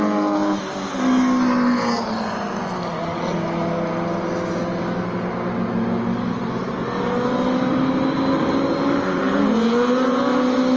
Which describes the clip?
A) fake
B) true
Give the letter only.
B